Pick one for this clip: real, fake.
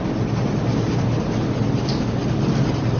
real